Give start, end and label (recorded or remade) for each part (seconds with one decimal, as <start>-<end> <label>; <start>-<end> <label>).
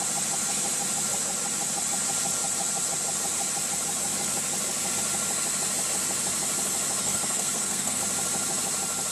0.0-7.0 recorded; 7.0-8.0 remade; 8.0-9.1 recorded